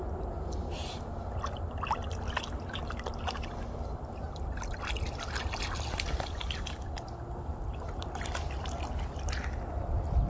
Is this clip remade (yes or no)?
no